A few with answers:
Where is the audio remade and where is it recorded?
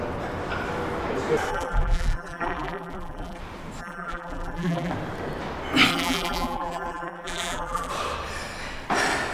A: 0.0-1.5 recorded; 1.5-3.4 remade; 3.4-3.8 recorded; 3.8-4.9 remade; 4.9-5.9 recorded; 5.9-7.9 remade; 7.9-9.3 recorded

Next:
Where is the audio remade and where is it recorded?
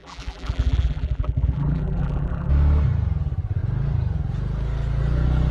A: 0.0-2.5 remade; 2.5-5.5 recorded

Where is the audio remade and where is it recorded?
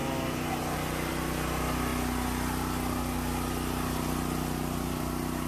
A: 0.0-5.5 recorded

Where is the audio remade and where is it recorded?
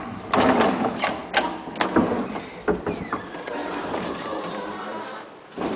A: 0.0-3.6 recorded; 3.6-4.5 remade; 4.5-5.8 recorded